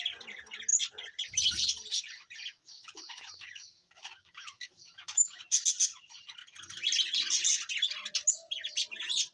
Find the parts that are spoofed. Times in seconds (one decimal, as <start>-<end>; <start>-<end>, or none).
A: 2.5-5.4